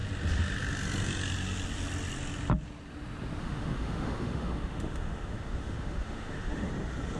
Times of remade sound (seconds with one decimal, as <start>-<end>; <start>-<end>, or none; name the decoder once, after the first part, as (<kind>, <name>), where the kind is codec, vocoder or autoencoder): 3.4-6.7 (autoencoder, DAC-VAE)